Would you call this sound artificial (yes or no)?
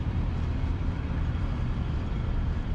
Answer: yes